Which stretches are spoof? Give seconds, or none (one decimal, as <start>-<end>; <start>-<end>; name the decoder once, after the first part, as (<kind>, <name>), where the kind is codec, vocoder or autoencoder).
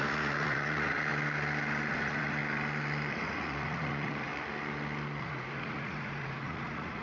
0.0-1.1 (vocoder, Vocos); 1.9-2.4; 3.1-4.3; 5.2-7.0